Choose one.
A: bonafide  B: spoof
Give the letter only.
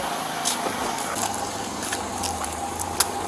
A